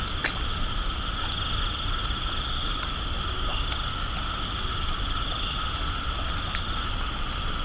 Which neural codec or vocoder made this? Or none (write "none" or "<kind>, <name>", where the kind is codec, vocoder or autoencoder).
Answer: none